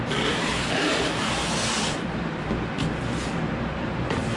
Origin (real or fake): fake